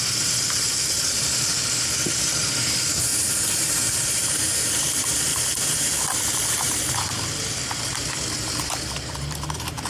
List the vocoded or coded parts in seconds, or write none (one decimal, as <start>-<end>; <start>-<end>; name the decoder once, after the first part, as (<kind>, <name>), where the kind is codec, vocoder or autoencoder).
0.0-9.9 (vocoder, BigVGAN v2)